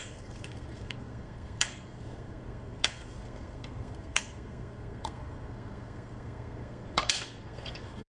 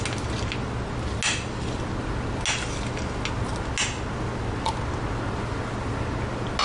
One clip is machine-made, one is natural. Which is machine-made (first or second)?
first